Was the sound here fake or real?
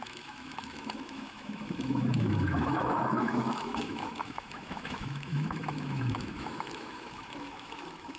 fake